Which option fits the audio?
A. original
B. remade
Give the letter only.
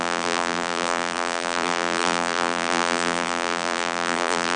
B